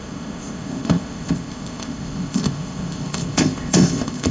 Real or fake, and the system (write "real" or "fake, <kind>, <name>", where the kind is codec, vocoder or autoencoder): fake, codec, ZipCodec